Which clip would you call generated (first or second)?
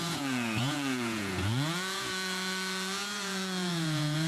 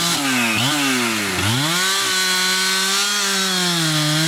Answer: first